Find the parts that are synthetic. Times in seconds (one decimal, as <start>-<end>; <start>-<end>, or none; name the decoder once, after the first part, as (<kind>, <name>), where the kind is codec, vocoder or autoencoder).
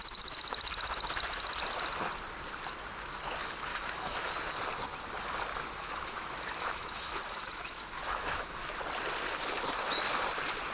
3.7-4.3 (autoencoder, DAC-VAE); 5.5-8.8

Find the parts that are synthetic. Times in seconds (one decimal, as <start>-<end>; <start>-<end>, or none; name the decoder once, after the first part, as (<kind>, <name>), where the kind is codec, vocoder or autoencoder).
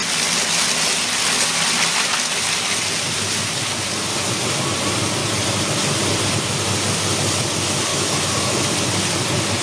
7.9-8.7 (autoencoder, DAC-VAE)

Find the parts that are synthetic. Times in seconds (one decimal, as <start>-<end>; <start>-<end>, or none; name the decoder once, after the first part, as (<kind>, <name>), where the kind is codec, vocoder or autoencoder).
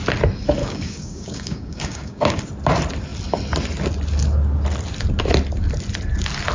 0.6-2.4 (codec, DAC)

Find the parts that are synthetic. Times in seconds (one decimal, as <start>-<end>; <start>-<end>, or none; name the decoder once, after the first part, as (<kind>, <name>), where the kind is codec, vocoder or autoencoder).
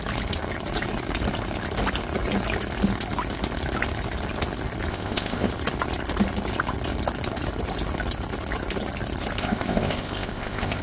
4.9-5.5 (codec, ZipCodec); 9.4-10.8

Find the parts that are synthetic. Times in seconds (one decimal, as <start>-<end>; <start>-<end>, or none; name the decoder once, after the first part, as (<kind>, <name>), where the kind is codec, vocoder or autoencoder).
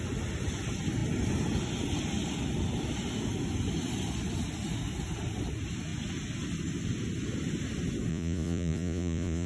8.1-9.5 (vocoder, Vocos)